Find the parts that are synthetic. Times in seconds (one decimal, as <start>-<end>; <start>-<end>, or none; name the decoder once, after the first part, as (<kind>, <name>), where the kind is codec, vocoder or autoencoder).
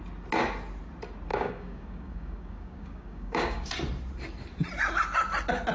1.3-3.7 (codec, DAC)